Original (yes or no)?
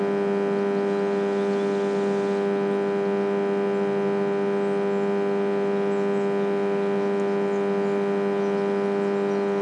yes